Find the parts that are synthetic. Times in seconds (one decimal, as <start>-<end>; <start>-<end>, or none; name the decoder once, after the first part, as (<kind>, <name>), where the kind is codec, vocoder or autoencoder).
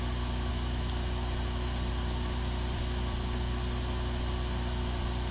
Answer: 0.0-0.5 (vocoder, BigVGAN v2); 1.9-5.3